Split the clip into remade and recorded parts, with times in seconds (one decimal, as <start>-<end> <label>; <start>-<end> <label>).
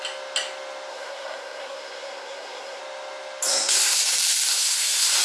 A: 0.0-0.9 recorded; 0.9-2.8 remade; 2.8-3.5 recorded; 3.5-4.0 remade; 4.0-4.5 recorded; 4.5-5.2 remade